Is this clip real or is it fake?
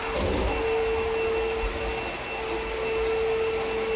real